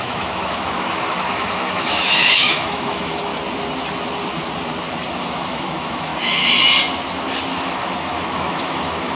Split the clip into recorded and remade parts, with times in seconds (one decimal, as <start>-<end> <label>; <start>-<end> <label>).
0.0-3.3 remade; 3.3-5.1 recorded; 5.1-6.1 remade; 6.1-7.5 recorded; 7.5-9.2 remade